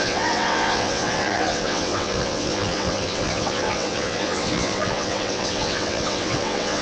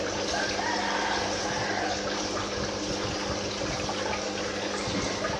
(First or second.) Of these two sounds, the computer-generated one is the first